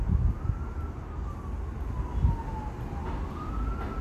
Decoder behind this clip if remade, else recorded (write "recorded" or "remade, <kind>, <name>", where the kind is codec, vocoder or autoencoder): recorded